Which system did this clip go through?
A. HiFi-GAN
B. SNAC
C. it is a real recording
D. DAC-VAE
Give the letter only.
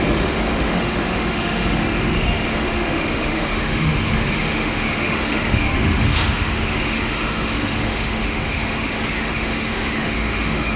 D